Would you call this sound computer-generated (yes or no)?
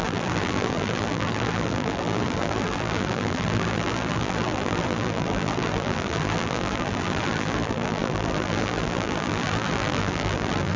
yes